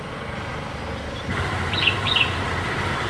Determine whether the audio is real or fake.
real